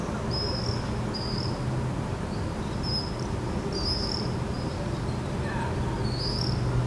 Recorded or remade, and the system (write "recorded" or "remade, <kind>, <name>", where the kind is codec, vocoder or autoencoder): recorded